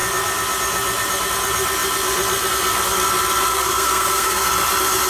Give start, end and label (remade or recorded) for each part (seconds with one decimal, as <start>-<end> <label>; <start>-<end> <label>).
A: 0.0-3.5 recorded; 3.5-4.5 remade; 4.5-5.1 recorded